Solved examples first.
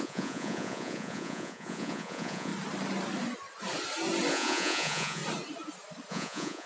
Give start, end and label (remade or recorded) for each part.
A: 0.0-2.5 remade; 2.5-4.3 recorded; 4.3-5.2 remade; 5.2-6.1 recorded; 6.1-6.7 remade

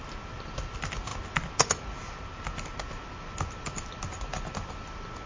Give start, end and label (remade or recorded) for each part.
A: 0.0-5.3 recorded

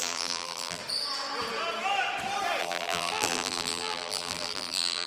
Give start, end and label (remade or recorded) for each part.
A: 0.0-0.8 remade; 0.8-2.6 recorded; 2.6-5.1 remade

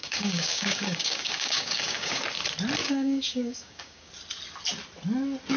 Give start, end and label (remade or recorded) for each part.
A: 0.0-2.2 remade; 2.2-2.8 recorded; 2.8-4.1 remade; 4.1-5.6 recorded

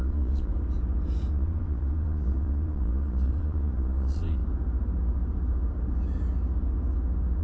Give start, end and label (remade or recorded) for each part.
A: 0.0-0.5 remade; 0.5-1.3 recorded; 1.3-4.4 remade; 4.4-7.4 recorded

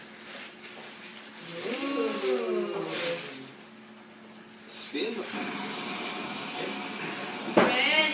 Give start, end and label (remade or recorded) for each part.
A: 0.0-8.1 recorded